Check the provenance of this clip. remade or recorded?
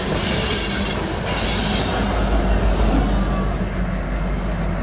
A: recorded